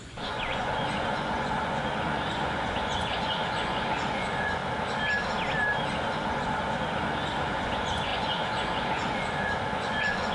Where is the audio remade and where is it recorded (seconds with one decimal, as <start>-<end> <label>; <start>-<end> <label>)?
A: 0.0-4.6 remade; 4.6-6.1 recorded; 6.1-10.3 remade